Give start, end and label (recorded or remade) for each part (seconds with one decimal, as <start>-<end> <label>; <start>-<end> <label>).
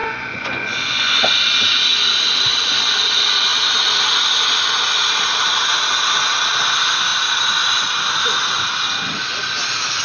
0.0-1.2 remade; 1.2-10.0 recorded